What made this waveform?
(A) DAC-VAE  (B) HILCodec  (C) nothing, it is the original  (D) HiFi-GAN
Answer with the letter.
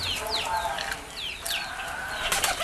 C